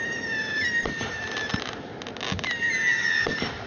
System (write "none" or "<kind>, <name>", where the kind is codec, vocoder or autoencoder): none